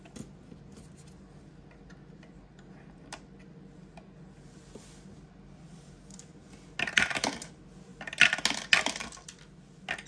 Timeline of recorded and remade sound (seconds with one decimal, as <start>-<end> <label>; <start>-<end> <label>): 0.0-10.1 recorded